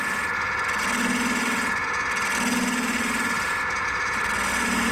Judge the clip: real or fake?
real